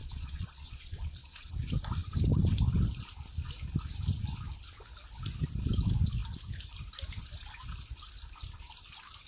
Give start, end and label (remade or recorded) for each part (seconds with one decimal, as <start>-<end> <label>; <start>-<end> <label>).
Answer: 0.0-1.5 remade; 1.5-9.3 recorded